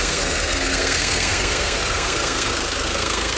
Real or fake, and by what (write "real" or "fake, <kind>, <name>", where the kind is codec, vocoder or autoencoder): fake, codec, SNAC